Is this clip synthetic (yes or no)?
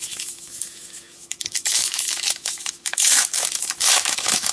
yes